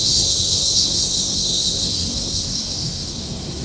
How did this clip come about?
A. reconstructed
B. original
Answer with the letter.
A